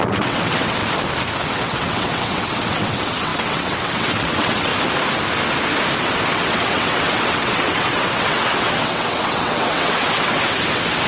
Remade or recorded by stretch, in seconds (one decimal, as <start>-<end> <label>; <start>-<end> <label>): 0.0-0.8 remade; 0.8-1.5 recorded; 1.5-4.7 remade; 4.7-6.3 recorded; 6.3-11.1 remade